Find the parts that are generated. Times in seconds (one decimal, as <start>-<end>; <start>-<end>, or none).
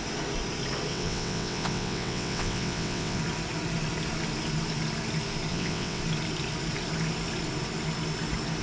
0.9-3.2; 5.5-6.0